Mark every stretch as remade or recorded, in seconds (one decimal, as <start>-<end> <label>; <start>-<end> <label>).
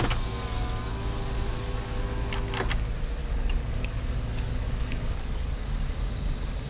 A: 0.0-3.2 recorded; 3.2-6.1 remade; 6.1-6.7 recorded